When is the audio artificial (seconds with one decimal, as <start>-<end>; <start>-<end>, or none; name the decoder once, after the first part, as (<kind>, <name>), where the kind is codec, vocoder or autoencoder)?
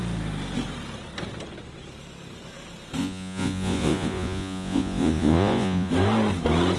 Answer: 3.0-5.9 (vocoder, Vocos)